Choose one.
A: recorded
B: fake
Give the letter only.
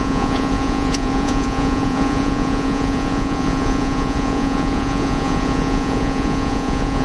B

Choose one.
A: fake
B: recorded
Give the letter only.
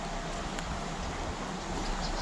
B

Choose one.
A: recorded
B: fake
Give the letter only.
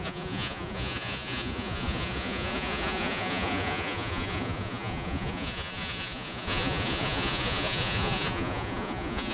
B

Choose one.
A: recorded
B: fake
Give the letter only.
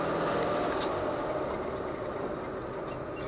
A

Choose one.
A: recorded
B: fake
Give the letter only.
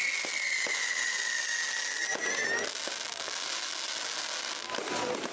A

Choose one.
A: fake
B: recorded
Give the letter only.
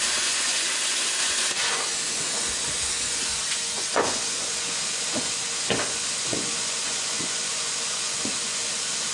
A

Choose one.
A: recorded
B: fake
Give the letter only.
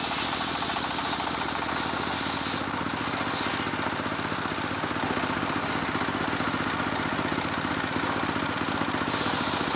A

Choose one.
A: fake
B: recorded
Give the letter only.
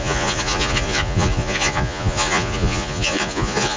A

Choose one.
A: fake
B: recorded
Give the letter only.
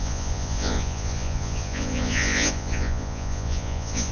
A